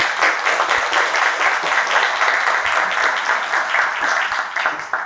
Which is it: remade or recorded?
recorded